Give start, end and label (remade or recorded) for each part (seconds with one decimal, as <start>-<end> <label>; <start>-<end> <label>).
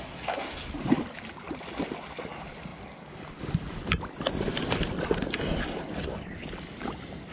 0.0-0.7 remade; 0.7-7.3 recorded